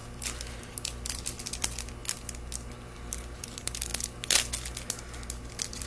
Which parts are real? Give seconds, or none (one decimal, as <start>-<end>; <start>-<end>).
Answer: 0.0-0.6; 2.0-3.1; 3.9-5.5